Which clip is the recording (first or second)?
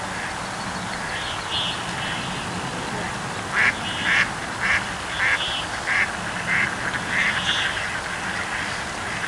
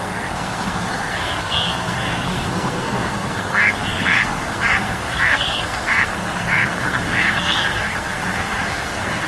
first